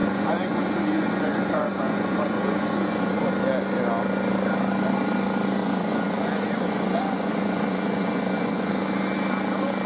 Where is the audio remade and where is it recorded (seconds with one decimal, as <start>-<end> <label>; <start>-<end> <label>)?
0.0-3.3 remade; 3.3-5.6 recorded; 5.6-8.7 remade; 8.7-9.9 recorded